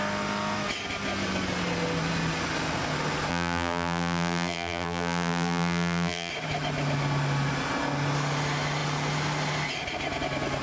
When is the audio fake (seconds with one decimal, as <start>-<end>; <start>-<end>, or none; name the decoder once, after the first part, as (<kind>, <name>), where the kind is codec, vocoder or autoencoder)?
3.3-6.3 (vocoder, BigVGAN v2)